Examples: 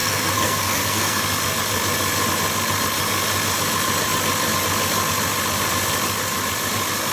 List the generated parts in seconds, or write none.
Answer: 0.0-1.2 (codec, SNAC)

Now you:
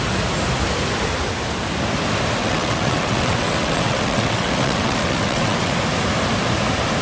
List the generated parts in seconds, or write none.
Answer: 2.4-5.7 (vocoder, WaveNeXt)

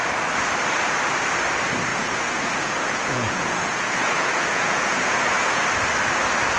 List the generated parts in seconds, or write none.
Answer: 1.9-5.6 (vocoder, Vocos)

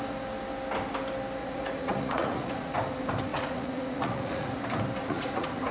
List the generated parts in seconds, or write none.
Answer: 1.4-2.7 (vocoder, Vocos); 3.3-4.5; 5.0-5.7